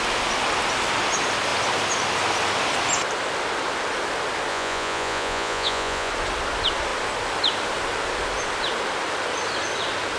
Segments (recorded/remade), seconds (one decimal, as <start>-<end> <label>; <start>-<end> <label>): 0.0-4.5 recorded; 4.5-6.1 remade; 6.1-10.2 recorded